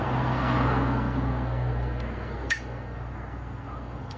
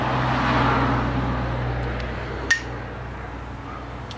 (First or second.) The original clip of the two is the second